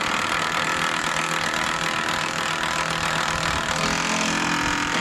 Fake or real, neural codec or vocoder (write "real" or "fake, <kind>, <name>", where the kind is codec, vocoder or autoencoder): real